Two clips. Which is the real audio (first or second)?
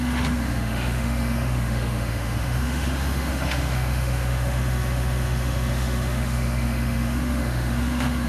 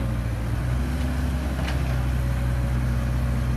second